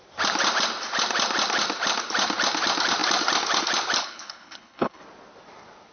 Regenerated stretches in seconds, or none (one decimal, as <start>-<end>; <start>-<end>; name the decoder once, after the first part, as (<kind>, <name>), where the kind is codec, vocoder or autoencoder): 4.0-5.0 (codec, HILCodec)

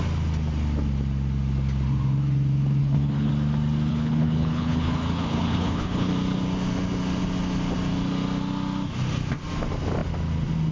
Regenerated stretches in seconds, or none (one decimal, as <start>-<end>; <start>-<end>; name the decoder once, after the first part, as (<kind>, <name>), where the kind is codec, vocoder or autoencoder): 2.8-3.3 (codec, HILCodec); 3.9-6.1

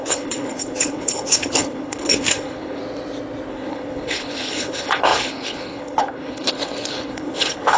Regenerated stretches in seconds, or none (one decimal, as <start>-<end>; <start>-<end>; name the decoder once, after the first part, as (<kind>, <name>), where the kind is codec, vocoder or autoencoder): 0.0-2.8 (codec, HILCodec); 3.5-7.8

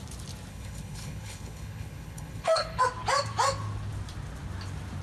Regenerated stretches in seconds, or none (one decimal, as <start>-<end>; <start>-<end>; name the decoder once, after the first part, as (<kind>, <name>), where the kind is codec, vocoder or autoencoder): 0.5-2.8 (codec, HILCodec)

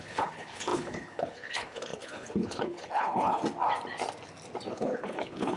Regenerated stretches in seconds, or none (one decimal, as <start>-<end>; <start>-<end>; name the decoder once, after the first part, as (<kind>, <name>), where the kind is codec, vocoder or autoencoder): 0.0-3.4 (codec, HILCodec); 4.7-5.6

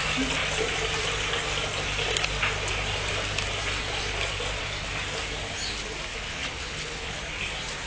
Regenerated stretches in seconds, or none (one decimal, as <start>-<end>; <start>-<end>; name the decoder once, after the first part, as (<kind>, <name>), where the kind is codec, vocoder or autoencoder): 6.1-7.2 (codec, HILCodec)

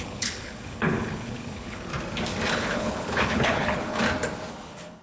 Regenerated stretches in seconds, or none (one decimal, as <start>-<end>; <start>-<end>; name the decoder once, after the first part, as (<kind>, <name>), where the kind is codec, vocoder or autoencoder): 0.0-1.9 (codec, HILCodec); 2.5-4.0; 4.5-5.0

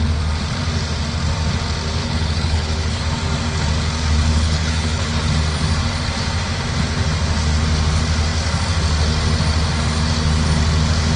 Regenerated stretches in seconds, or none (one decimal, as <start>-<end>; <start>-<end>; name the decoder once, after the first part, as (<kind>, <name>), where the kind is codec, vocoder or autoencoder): 2.0-3.0 (codec, HILCodec); 4.3-5.3